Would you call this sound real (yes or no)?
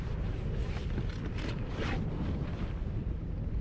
yes